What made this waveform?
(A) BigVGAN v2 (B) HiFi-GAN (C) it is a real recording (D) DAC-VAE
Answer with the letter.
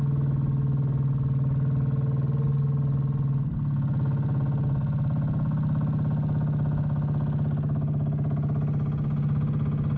C